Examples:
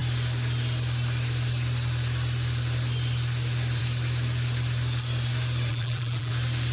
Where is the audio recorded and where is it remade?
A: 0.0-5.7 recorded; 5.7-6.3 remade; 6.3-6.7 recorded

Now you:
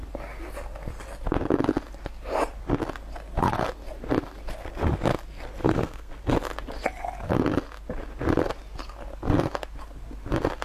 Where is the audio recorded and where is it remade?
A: 0.0-5.6 recorded; 5.6-6.1 remade; 6.1-10.6 recorded

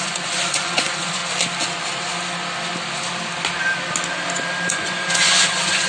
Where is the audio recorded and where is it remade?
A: 0.0-1.2 remade; 1.2-4.7 recorded; 4.7-5.9 remade

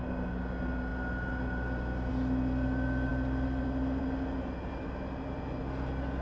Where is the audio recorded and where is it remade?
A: 0.0-6.2 recorded